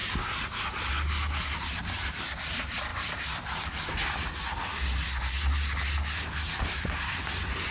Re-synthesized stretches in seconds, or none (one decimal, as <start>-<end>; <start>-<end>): none